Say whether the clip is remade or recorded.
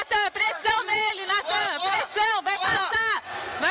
remade